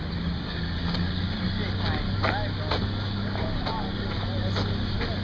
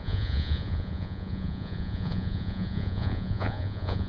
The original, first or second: first